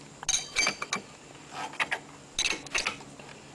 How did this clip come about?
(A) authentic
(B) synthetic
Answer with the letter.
A